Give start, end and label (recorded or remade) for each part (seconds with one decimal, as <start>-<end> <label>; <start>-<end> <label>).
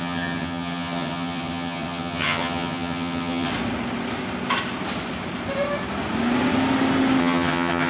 0.0-3.5 remade; 3.5-7.2 recorded; 7.2-7.9 remade